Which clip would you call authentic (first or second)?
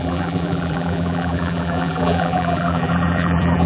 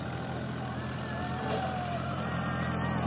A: second